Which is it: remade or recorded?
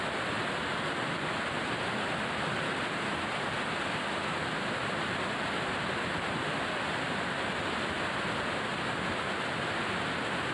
recorded